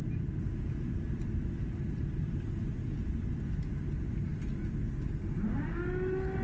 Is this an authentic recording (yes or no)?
yes